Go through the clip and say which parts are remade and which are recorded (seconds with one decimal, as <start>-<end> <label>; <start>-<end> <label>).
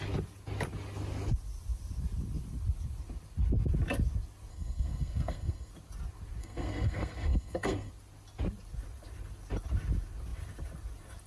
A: 0.0-4.5 recorded; 4.5-5.7 remade; 5.7-6.4 recorded; 6.4-7.9 remade; 7.9-11.3 recorded